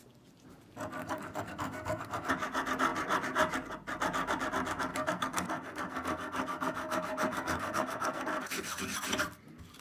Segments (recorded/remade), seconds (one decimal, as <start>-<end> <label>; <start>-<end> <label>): 0.0-1.0 recorded; 1.0-2.3 remade; 2.3-4.9 recorded; 4.9-8.8 remade; 8.8-9.8 recorded